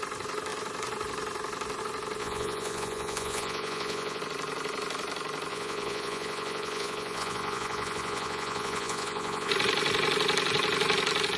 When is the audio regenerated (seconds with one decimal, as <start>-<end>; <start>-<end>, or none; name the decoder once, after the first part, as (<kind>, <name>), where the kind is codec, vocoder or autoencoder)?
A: 2.2-4.2 (vocoder, Vocos); 5.5-9.5